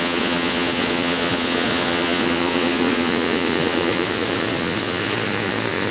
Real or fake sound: fake